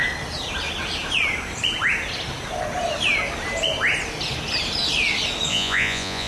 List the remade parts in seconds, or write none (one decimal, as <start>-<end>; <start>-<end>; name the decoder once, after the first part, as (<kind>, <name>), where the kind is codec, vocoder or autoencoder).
5.5-6.3 (vocoder, Vocos)